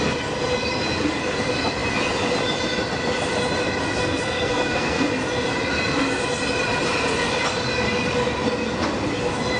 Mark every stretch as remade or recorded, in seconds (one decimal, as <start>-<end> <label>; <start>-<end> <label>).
0.0-4.0 recorded; 4.0-5.1 remade; 5.1-9.6 recorded